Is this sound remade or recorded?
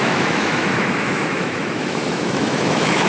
remade